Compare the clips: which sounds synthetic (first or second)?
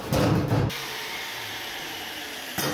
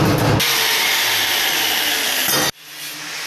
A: first